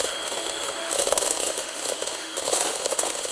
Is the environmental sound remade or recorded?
remade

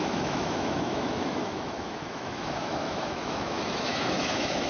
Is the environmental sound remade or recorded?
remade